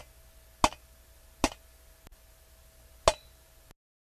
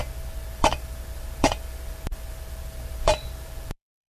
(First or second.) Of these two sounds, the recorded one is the first